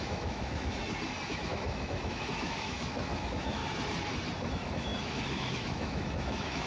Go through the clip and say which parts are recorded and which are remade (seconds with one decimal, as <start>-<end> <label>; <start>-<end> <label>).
0.0-0.8 remade; 0.8-1.3 recorded; 1.3-3.6 remade; 3.6-4.5 recorded; 4.5-6.7 remade